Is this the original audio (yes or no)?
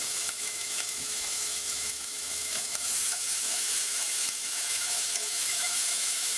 no